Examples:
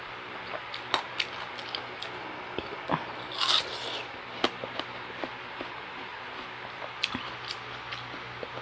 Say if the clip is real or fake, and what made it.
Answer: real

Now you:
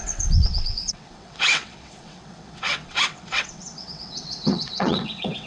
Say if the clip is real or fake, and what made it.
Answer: fake, vocoder, WaveNeXt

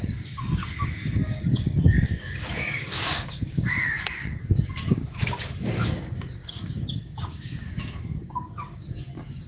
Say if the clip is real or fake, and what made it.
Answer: fake, codec, DAC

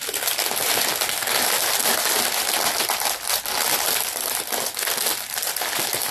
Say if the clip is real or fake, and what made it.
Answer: real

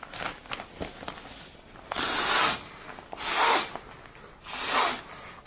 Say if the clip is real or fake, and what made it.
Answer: real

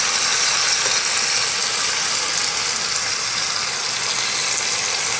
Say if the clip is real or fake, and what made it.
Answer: real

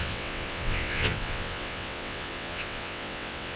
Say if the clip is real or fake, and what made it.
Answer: fake, vocoder, WaveNeXt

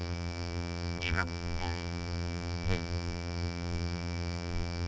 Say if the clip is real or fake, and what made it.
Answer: fake, vocoder, BigVGAN v2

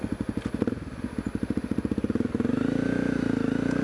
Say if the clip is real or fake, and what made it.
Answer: real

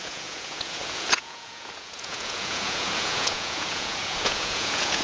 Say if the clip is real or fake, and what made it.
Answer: fake, vocoder, Vocos